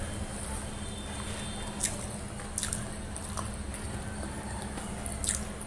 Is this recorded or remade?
recorded